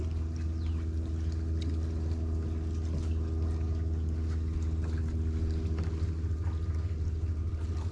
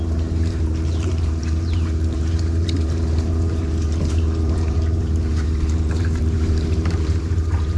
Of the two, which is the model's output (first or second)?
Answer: second